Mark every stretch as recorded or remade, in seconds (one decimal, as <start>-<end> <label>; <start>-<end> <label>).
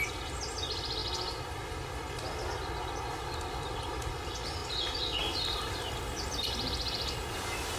0.0-7.8 recorded